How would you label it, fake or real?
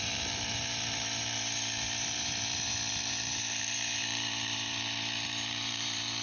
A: fake